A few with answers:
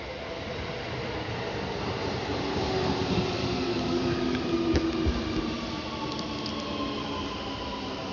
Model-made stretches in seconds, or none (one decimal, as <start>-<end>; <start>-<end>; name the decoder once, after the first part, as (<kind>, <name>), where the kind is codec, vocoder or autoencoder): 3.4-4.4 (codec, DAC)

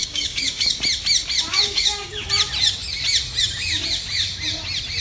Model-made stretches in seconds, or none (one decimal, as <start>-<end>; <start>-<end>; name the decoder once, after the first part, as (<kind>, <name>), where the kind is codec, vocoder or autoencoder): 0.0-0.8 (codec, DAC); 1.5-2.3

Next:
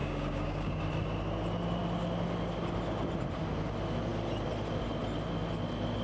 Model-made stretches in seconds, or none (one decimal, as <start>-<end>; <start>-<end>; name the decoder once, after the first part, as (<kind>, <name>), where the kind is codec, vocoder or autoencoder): 0.0-0.8 (codec, DAC)

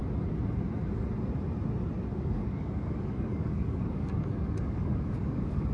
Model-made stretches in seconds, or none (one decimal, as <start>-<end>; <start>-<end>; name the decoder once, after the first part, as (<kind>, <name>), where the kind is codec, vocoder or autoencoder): 2.1-5.7 (codec, DAC)